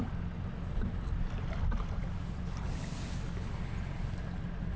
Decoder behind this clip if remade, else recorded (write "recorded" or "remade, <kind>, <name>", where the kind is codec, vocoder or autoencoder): recorded